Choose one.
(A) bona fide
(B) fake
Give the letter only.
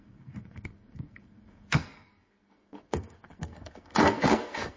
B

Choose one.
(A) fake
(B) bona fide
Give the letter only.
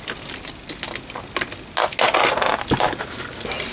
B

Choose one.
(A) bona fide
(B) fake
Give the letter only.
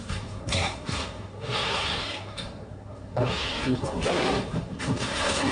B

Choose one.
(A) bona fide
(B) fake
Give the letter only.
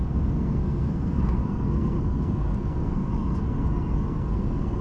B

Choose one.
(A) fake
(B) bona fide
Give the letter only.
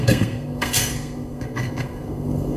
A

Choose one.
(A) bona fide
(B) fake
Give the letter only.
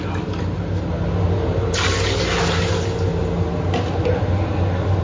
A